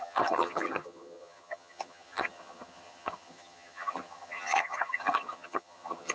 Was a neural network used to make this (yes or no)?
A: yes